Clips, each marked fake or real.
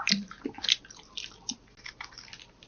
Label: real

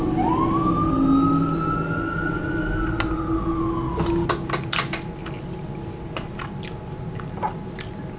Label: real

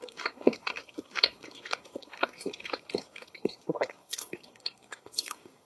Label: fake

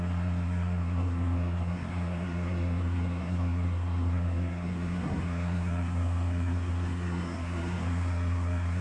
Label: fake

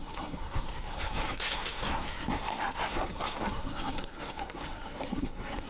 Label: fake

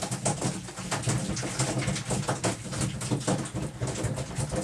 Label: real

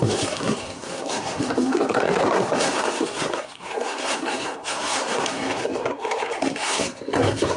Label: fake